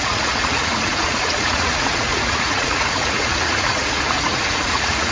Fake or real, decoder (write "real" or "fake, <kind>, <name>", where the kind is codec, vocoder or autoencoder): fake, vocoder, Vocos